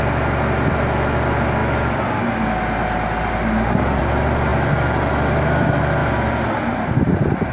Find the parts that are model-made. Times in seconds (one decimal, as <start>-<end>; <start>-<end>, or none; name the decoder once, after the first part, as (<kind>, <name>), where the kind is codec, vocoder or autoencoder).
none